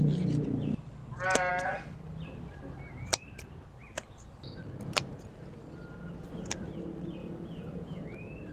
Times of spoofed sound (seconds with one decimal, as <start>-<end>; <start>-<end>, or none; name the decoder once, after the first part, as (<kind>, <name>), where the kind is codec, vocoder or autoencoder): 7.2-8.0 (vocoder, Vocos)